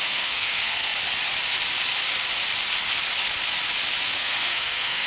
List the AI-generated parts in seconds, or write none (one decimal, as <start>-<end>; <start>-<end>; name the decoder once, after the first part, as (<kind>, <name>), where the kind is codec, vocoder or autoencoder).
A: 0.0-0.9 (codec, SNAC); 4.0-5.1